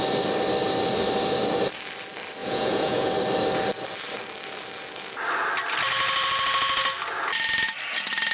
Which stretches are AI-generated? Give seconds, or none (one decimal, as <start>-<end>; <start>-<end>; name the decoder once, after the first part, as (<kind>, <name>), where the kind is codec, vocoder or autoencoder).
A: 2.4-3.1 (vocoder, Vocos)

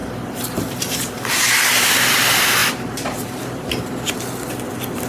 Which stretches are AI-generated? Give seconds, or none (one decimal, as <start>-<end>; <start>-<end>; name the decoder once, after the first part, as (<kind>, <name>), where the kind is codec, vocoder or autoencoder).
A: 0.0-1.3 (vocoder, BigVGAN v2); 2.6-3.7

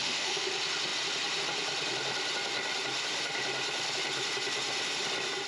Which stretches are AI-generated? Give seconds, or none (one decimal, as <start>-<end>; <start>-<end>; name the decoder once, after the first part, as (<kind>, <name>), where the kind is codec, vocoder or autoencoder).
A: 0.0-0.5 (autoencoder, DAC-VAE)

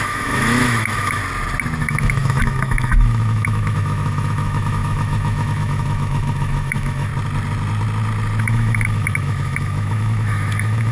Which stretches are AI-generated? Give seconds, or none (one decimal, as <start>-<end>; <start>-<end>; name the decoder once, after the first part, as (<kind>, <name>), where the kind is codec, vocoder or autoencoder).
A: 0.0-1.2 (autoencoder, DAC-VAE); 1.8-7.1; 8.4-10.9

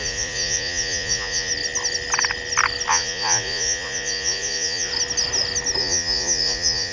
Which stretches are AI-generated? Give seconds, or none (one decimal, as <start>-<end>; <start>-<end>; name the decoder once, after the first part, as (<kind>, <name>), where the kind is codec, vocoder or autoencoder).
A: 0.0-1.5 (vocoder, Vocos); 2.9-4.9; 5.8-6.9